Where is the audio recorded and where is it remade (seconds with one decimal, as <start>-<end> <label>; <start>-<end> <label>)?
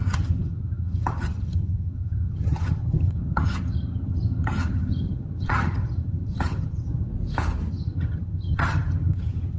0.0-7.1 remade; 7.1-7.7 recorded; 7.7-9.6 remade